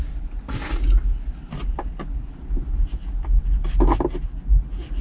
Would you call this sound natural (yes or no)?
yes